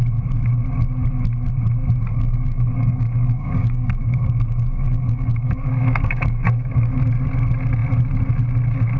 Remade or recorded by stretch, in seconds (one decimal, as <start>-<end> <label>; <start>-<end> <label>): 0.0-2.1 recorded; 2.1-7.0 remade; 7.0-9.0 recorded